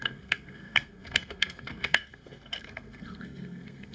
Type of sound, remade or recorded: remade